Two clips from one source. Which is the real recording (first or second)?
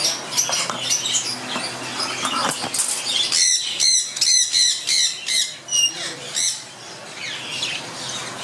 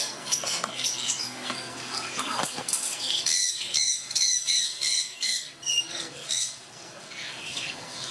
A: first